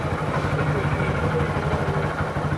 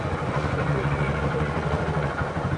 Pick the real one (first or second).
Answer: first